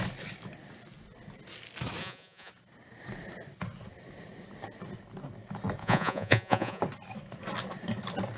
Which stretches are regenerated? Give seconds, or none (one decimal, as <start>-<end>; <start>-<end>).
2.0-2.5; 5.8-6.8

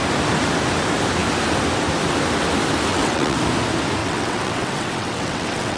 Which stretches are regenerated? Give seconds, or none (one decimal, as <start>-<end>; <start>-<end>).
2.9-3.4; 4.0-5.8

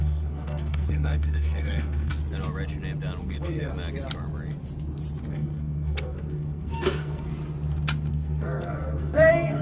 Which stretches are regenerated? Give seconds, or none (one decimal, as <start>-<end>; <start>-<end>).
0.0-2.1; 3.2-3.7; 5.3-7.3; 8.1-9.6

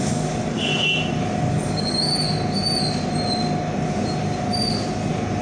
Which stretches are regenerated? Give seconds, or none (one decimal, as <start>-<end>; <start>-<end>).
0.0-0.7; 1.5-2.1

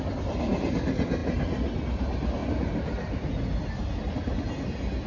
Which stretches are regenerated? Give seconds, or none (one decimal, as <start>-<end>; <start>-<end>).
none

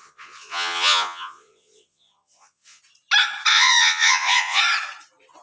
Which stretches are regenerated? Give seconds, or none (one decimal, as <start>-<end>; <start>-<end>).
0.0-2.8; 3.5-4.6